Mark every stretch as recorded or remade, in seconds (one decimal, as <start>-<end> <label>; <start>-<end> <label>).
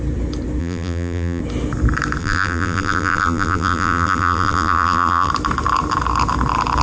0.0-0.6 recorded; 0.6-1.4 remade; 1.4-2.2 recorded; 2.2-5.3 remade; 5.3-6.8 recorded